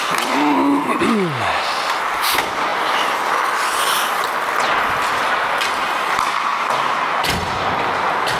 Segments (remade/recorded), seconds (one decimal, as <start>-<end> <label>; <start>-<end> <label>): 0.0-6.5 recorded; 6.5-7.7 remade; 7.7-8.4 recorded